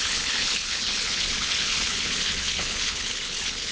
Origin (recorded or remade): remade